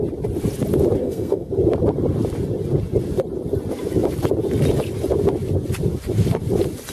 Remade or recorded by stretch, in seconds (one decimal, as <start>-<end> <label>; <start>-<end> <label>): 0.0-1.0 recorded; 1.0-1.5 remade; 1.5-6.9 recorded